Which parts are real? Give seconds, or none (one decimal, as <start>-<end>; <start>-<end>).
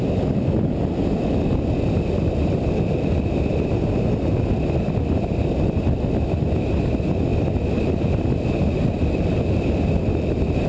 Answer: 0.0-10.7